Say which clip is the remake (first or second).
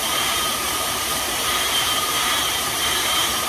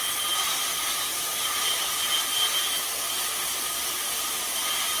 first